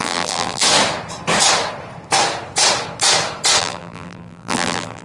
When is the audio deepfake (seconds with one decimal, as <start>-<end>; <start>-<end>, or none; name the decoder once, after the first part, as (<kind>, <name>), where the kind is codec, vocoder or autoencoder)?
0.0-0.6 (vocoder, BigVGAN v2); 3.6-5.0